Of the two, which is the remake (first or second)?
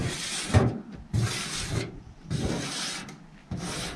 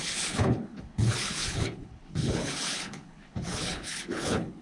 second